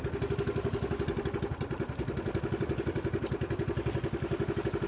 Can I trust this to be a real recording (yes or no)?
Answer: yes